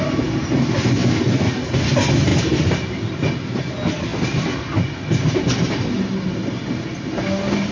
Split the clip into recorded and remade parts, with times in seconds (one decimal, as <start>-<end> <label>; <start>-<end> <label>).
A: 0.0-7.7 recorded